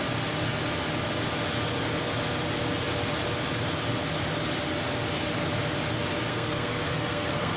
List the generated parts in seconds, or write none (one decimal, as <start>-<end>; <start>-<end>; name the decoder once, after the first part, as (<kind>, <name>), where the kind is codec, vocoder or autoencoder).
6.3-7.6 (codec, SNAC)

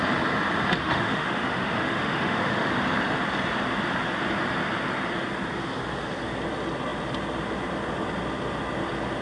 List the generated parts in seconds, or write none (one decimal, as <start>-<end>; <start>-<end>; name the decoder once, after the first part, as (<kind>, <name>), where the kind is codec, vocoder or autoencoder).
0.8-2.7 (autoencoder, DAC-VAE)

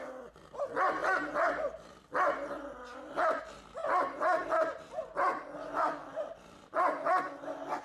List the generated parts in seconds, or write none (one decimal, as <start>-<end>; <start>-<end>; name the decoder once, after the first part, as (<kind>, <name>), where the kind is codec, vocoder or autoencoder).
none

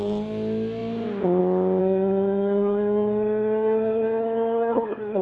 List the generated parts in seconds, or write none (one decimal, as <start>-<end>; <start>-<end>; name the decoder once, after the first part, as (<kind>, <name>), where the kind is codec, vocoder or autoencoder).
1.8-5.2 (codec, SNAC)

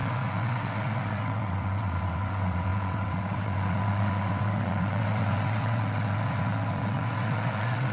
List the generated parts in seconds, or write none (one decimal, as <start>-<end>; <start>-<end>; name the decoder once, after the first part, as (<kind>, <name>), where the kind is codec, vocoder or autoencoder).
0.0-7.9 (vocoder, WaveNeXt)

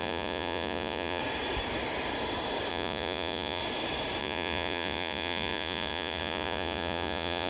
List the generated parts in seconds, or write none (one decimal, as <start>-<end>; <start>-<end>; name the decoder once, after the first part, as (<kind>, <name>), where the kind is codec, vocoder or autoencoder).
0.0-1.2 (vocoder, Vocos); 2.7-3.6; 4.2-7.5

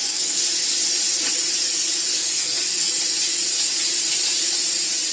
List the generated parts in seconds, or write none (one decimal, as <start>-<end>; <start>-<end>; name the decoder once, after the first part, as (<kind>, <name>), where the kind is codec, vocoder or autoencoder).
0.0-0.4 (codec, SNAC); 2.1-2.9

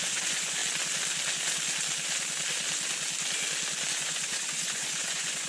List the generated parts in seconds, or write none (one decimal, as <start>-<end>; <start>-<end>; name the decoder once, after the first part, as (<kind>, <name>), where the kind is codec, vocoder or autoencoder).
0.0-0.6 (vocoder, Vocos); 3.9-5.5